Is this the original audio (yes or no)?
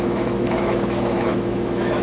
no